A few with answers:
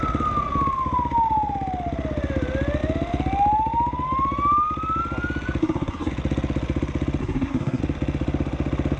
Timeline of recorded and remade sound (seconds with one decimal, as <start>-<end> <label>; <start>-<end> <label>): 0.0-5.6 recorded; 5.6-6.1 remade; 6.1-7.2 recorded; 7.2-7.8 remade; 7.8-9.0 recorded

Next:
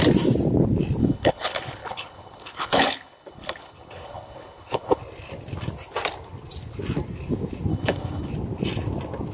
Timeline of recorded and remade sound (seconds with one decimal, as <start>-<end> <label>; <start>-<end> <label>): 0.0-1.0 recorded; 1.0-5.0 remade; 5.0-7.7 recorded; 7.7-8.3 remade; 8.3-9.3 recorded

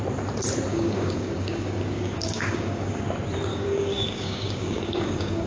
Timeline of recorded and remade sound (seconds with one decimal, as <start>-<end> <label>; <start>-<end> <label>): 0.0-0.7 recorded; 0.7-3.0 remade; 3.0-3.5 recorded; 3.5-5.5 remade